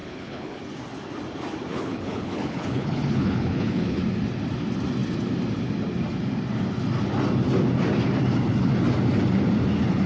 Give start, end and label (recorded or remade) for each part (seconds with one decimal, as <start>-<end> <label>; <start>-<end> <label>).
0.0-0.6 remade; 0.6-1.7 recorded; 1.7-4.0 remade; 4.0-10.1 recorded